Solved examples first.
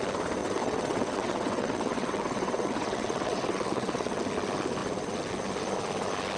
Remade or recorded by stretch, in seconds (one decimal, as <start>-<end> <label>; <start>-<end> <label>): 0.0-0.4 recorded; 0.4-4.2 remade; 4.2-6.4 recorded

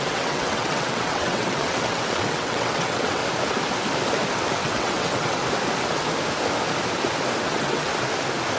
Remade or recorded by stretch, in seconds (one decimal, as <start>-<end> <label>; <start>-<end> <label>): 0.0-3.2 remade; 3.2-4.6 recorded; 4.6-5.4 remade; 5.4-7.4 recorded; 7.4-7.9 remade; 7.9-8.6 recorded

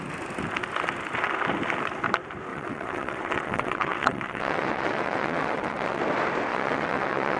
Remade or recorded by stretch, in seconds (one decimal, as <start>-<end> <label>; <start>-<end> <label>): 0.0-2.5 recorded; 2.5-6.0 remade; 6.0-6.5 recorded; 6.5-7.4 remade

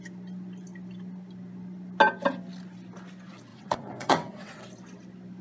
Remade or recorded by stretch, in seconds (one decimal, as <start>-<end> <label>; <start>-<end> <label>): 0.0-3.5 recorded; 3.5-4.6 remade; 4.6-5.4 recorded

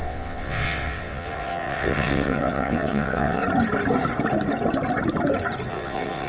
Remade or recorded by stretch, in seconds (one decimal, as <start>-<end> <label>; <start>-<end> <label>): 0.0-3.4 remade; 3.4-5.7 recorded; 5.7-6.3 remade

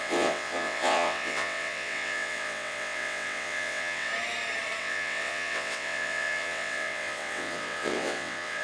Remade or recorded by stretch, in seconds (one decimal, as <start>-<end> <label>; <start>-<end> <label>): 0.0-4.1 remade; 4.1-4.8 recorded; 4.8-8.6 remade

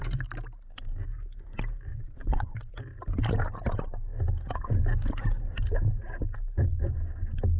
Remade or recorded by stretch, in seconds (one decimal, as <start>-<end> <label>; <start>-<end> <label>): 0.0-1.9 recorded; 1.9-2.7 remade; 2.7-7.6 recorded

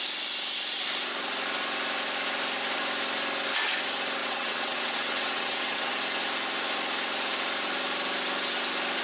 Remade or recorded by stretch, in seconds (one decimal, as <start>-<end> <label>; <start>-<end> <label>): 0.0-4.2 recorded; 4.2-5.9 remade; 5.9-9.0 recorded